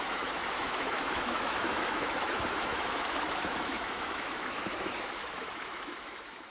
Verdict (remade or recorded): remade